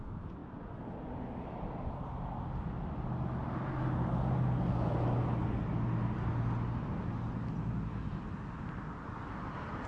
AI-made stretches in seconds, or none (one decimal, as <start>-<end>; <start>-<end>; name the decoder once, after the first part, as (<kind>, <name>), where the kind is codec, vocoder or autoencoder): none